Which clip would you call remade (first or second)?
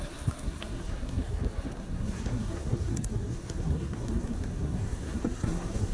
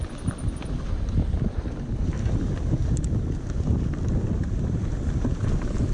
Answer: first